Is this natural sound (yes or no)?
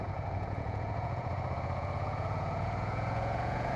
no